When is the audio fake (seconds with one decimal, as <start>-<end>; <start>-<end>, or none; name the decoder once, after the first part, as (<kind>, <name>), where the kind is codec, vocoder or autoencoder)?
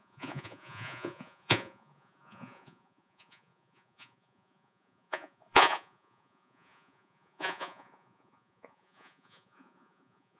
0.0-10.4 (vocoder, Vocos)